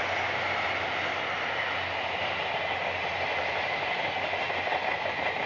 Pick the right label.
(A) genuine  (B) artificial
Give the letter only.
A